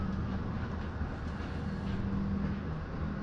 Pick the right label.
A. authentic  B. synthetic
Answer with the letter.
A